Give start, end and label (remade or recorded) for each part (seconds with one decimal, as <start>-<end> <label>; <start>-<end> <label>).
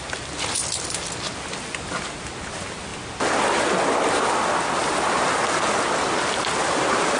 0.0-7.2 recorded